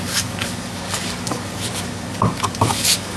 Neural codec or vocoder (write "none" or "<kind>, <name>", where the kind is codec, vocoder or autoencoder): codec, DAC